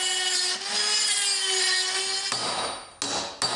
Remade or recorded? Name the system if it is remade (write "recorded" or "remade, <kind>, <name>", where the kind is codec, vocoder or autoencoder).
recorded